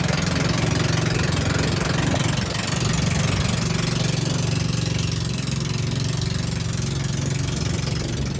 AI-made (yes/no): no